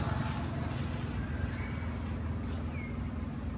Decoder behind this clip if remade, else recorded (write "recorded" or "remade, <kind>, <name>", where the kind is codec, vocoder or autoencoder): recorded